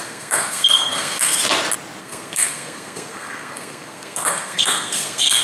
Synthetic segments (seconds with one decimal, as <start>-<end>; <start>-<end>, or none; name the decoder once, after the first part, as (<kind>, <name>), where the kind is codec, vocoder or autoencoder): 0.0-1.4 (codec, SNAC); 2.0-5.4